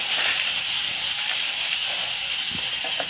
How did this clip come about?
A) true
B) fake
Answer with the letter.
B